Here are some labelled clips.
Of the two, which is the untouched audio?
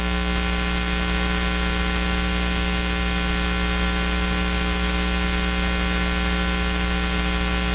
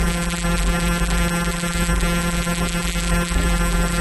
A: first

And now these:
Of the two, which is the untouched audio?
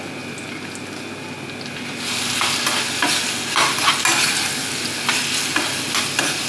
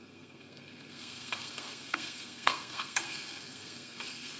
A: first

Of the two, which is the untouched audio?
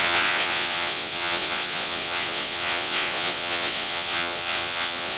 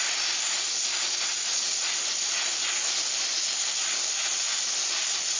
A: second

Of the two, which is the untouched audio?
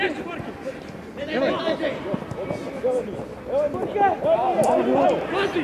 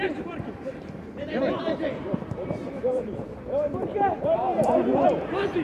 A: first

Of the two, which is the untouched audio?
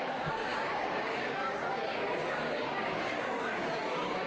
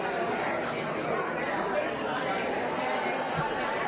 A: second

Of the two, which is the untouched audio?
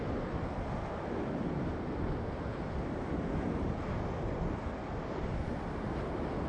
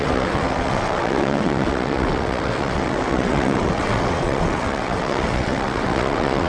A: first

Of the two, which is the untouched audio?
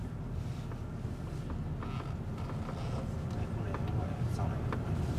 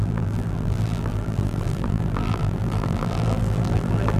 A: first